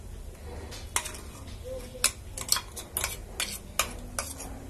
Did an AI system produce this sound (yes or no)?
no